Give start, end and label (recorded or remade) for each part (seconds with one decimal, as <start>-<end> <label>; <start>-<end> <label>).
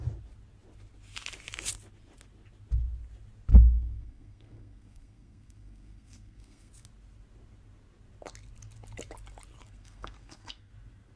0.0-3.5 recorded; 3.5-6.7 remade; 6.7-9.6 recorded; 9.6-10.7 remade; 10.7-11.2 recorded